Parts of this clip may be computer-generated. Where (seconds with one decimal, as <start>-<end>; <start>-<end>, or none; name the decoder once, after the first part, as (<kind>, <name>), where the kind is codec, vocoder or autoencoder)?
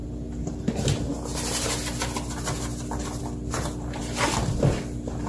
none